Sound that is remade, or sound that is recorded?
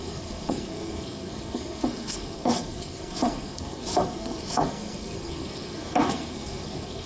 remade